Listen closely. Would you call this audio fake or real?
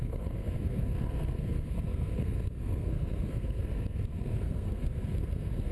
fake